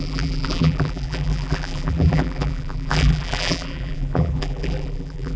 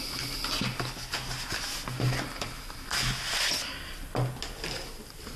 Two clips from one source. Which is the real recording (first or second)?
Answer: second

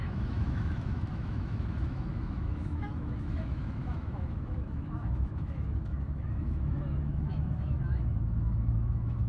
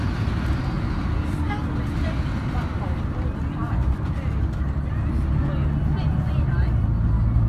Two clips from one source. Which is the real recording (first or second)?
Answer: second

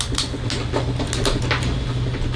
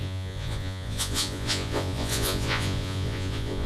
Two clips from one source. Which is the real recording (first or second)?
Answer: first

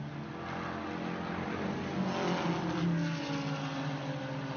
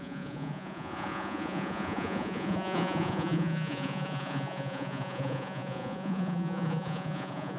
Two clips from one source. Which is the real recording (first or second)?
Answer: first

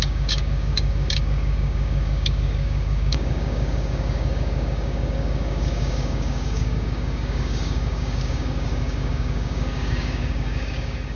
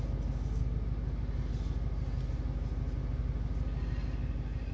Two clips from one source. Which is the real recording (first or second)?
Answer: second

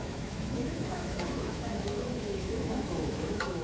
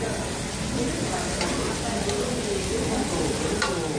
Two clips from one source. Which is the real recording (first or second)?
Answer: second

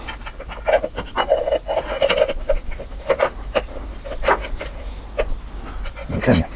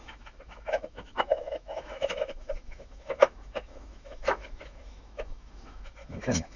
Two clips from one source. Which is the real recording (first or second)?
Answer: first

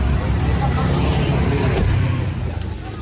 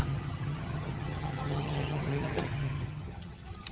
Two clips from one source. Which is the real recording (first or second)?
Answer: first